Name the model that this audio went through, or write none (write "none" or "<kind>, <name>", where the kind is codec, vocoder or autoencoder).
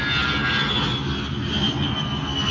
none